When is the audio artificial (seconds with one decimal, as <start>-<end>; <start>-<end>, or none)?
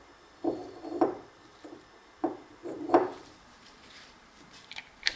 2.6-5.2